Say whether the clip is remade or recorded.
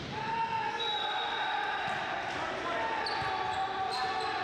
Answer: recorded